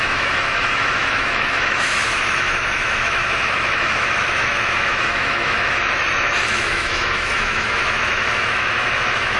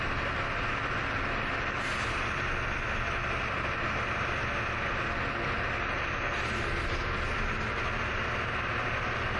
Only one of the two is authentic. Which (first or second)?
second